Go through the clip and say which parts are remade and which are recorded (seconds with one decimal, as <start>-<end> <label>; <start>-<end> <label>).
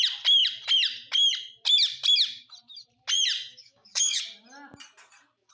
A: 0.0-3.5 recorded; 3.5-4.2 remade; 4.2-5.5 recorded